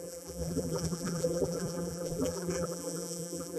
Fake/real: fake